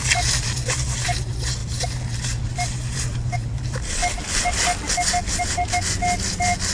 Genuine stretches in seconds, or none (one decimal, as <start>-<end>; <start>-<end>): 4.0-5.4